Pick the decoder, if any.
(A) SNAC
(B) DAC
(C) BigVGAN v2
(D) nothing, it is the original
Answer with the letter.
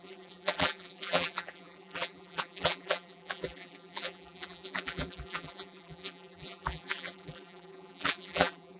C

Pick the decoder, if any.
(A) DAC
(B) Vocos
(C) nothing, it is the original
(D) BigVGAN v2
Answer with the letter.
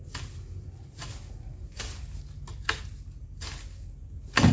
C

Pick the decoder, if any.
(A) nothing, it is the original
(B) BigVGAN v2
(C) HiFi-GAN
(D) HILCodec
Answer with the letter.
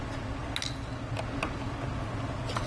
A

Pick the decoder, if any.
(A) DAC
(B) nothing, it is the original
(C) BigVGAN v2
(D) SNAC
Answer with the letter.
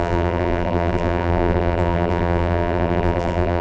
C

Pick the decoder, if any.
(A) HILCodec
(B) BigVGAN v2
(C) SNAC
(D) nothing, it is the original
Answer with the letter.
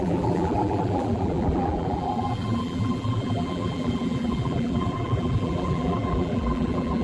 B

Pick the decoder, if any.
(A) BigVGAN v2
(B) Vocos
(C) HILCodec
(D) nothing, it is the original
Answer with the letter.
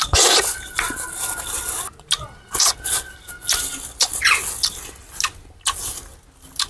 D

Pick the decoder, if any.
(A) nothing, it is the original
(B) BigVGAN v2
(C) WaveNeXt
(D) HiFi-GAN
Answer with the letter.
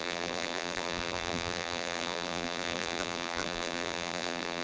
B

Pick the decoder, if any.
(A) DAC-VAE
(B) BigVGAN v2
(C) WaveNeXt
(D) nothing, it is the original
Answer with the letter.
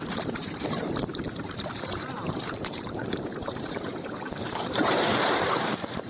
B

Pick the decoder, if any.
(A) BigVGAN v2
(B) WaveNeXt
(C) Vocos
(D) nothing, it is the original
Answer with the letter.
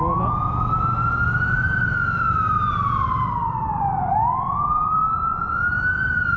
D